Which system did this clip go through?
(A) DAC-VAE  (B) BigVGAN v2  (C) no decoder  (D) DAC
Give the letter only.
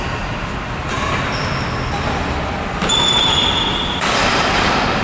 B